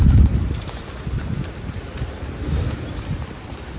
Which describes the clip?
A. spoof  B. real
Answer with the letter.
B